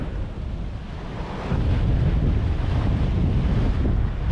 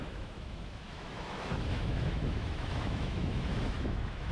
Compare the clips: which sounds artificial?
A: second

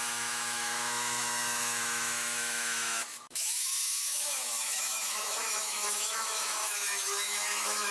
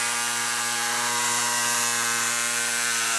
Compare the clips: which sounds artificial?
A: first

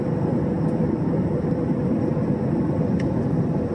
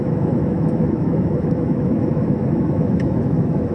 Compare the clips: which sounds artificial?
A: second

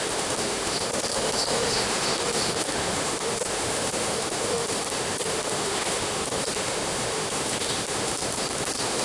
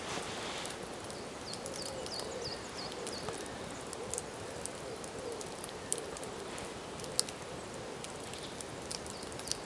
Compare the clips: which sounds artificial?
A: first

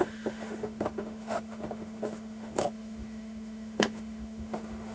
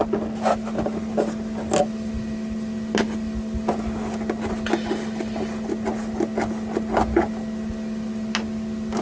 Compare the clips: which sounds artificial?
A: first